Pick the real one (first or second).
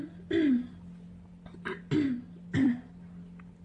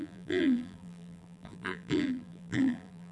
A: first